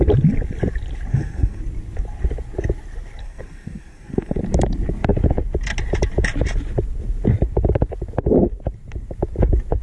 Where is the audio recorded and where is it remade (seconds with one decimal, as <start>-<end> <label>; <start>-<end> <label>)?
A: 0.0-1.1 recorded; 1.1-1.6 remade; 1.6-3.2 recorded; 3.2-4.4 remade; 4.4-9.8 recorded